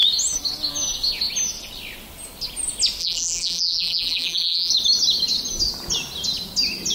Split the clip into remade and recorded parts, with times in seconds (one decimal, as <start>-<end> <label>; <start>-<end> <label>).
0.0-3.0 recorded; 3.0-4.7 remade; 4.7-6.9 recorded